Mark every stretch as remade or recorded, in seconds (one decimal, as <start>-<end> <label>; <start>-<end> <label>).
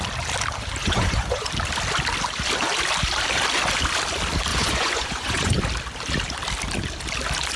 0.0-0.8 recorded; 0.8-1.5 remade; 1.5-4.5 recorded; 4.5-5.6 remade; 5.6-7.6 recorded